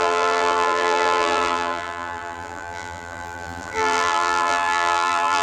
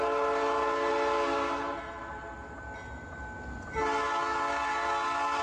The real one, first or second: second